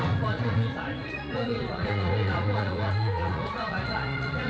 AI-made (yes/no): yes